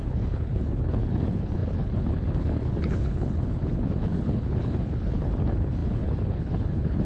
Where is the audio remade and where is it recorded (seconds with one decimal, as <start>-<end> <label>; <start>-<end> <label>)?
0.0-7.0 remade